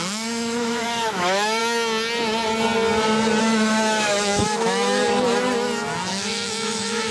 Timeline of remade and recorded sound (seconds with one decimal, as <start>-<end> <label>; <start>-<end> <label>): 0.0-1.6 remade; 1.6-3.4 recorded; 3.4-5.0 remade; 5.0-6.1 recorded; 6.1-7.1 remade